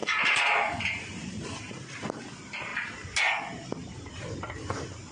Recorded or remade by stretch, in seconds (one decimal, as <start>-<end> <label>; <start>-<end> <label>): 0.0-1.6 remade; 1.6-5.1 recorded